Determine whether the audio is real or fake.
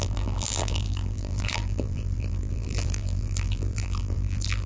fake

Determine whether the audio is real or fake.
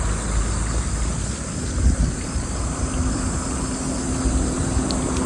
real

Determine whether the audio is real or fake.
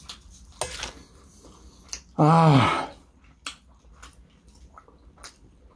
real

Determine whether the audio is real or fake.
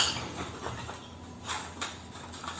fake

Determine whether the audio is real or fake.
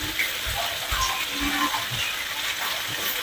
real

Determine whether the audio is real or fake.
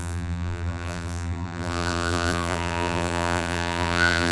fake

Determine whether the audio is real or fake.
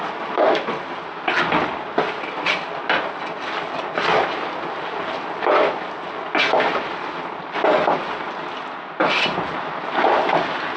real